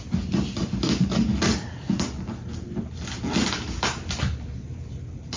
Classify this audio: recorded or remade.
recorded